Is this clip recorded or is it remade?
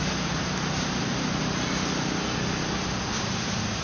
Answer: recorded